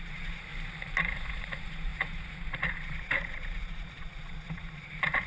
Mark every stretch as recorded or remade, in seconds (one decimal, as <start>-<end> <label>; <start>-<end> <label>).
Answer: 0.0-0.5 remade; 0.5-1.0 recorded; 1.0-5.3 remade